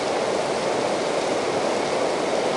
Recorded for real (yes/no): yes